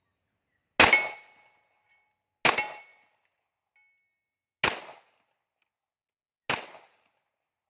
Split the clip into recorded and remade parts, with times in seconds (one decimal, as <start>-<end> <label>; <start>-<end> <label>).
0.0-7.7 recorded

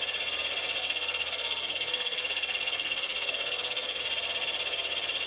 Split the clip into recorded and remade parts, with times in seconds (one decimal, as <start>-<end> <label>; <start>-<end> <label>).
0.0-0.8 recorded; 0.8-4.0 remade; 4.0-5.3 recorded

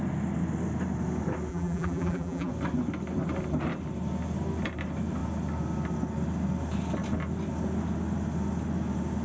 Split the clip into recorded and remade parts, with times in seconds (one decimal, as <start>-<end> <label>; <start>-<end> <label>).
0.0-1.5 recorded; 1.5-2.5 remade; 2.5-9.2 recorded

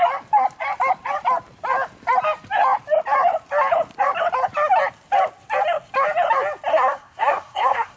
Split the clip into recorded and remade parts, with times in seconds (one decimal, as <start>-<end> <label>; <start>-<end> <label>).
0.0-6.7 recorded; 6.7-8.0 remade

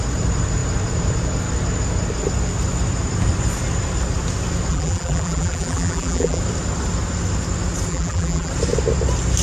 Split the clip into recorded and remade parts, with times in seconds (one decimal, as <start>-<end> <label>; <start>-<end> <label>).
0.0-4.7 recorded; 4.7-6.4 remade; 6.4-7.9 recorded; 7.9-8.5 remade; 8.5-9.4 recorded